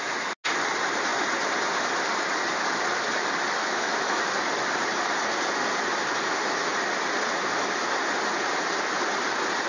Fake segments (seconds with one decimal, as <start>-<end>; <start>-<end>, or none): 3.6-4.3

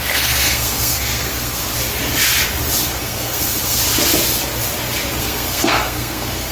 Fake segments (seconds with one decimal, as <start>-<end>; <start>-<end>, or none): 0.0-1.7; 3.0-3.8; 5.2-6.5

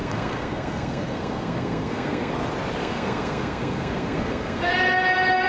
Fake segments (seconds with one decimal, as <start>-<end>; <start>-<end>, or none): 0.0-2.3; 2.8-4.7

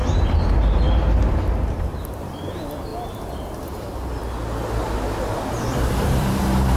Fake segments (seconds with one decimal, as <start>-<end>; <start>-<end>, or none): 0.0-2.9; 3.6-4.2; 5.2-6.8

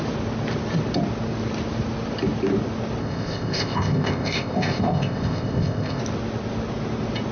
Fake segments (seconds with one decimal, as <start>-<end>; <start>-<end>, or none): 3.0-6.0

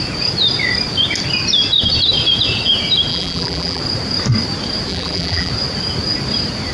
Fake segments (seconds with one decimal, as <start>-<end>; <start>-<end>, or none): 3.1-3.8; 4.9-5.5